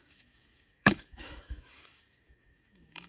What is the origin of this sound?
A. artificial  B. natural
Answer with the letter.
A